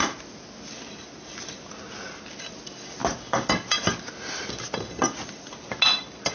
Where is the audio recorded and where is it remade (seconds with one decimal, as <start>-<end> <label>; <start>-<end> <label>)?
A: 0.0-6.3 recorded